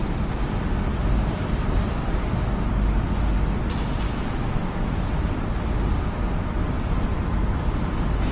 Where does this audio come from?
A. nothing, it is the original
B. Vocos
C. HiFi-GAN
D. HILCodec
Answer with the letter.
A